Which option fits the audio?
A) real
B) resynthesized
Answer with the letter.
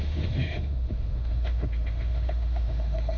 B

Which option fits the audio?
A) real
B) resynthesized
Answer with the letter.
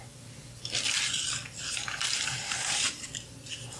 A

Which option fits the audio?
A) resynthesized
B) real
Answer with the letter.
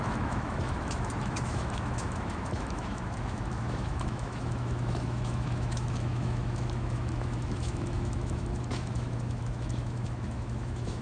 A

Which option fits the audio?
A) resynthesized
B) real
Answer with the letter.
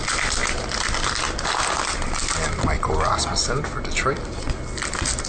B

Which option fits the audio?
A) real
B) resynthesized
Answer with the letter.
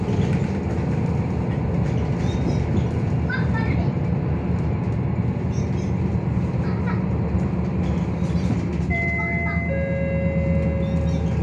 A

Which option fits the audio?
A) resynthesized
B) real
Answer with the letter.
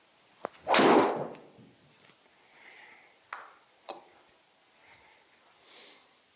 B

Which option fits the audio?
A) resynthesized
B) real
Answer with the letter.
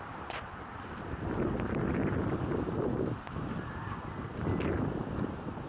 B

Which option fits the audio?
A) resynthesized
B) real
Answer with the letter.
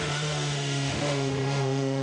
A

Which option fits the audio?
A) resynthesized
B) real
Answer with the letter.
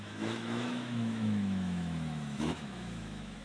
A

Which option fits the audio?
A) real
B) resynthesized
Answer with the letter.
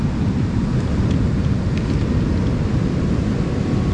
A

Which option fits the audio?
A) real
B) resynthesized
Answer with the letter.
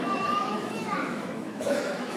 B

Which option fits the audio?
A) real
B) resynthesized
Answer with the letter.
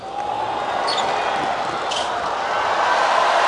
A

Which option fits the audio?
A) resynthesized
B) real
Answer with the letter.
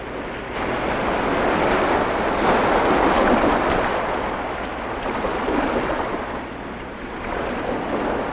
B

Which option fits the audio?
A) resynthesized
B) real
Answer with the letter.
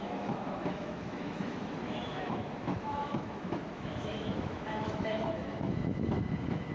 A